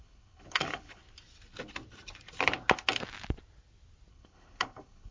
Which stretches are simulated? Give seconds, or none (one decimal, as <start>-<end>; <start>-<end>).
0.0-1.0; 4.1-5.1